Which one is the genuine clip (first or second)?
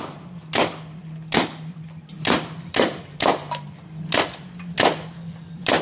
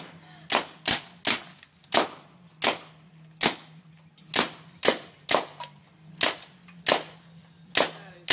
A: second